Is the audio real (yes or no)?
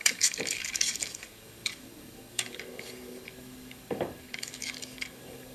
no